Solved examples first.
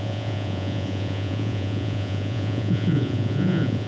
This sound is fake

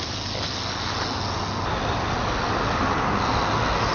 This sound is real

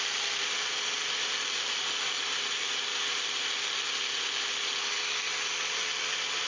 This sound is fake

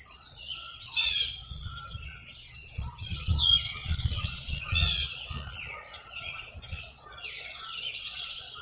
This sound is fake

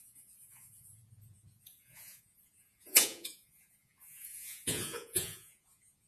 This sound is fake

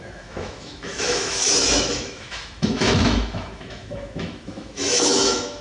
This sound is fake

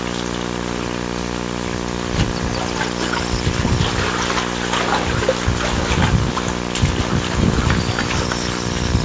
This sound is real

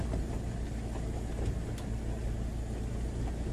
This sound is real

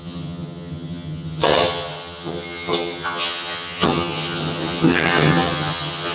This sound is fake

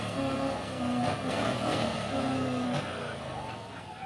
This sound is fake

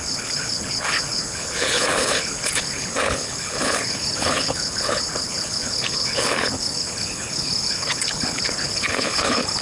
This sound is fake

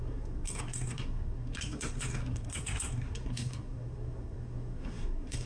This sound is fake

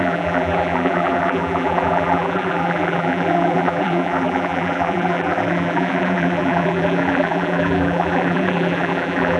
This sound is fake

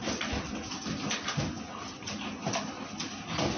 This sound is real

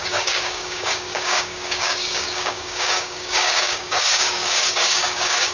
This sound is fake